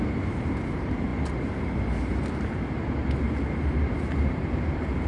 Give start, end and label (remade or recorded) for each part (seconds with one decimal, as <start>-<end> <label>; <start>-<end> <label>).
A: 0.0-1.1 remade; 1.1-4.2 recorded; 4.2-5.1 remade